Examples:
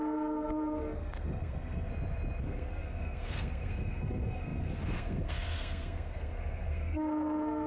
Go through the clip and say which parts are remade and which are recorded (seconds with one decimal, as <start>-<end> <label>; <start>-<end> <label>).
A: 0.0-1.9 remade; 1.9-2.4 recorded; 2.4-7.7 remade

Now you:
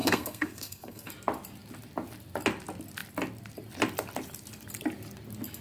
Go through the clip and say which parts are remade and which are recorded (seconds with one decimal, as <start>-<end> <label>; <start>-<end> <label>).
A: 0.0-1.1 remade; 1.1-5.6 recorded

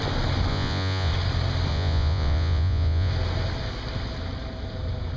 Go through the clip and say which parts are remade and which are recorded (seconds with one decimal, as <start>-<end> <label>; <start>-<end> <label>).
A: 0.0-0.5 recorded; 0.5-1.1 remade; 1.1-1.7 recorded; 1.7-3.1 remade; 3.1-5.2 recorded

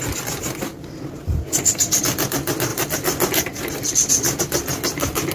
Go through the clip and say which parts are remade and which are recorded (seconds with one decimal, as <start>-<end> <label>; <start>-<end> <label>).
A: 0.0-0.7 recorded; 0.7-2.0 remade; 2.0-2.7 recorded; 2.7-4.4 remade; 4.4-5.3 recorded